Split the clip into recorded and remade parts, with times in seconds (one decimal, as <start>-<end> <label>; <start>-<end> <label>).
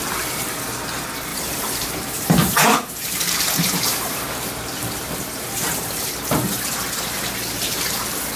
0.0-1.3 recorded; 1.3-6.0 remade; 6.0-7.4 recorded; 7.4-8.0 remade; 8.0-8.4 recorded